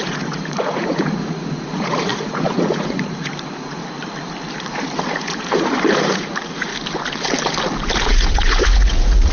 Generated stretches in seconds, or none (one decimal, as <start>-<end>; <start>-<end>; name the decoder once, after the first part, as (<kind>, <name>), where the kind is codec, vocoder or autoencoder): 0.0-3.8 (vocoder, Vocos); 5.2-6.7; 8.1-9.3